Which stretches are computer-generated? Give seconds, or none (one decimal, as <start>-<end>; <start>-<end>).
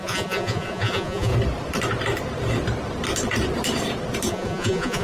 0.0-1.3; 4.3-5.0